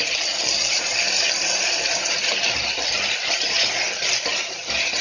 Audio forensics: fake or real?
real